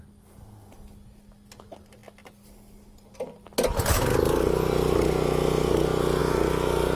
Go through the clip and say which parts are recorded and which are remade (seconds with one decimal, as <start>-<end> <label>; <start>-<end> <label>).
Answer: 0.0-7.0 recorded